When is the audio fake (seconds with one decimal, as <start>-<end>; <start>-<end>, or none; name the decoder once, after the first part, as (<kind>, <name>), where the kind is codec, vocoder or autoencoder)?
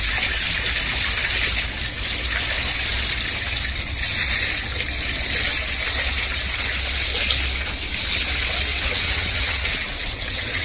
8.7-10.6 (vocoder, WaveNeXt)